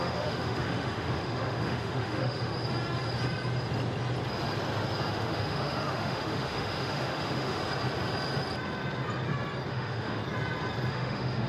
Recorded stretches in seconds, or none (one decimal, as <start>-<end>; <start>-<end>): 2.5-5.1; 7.6-9.7; 10.2-10.9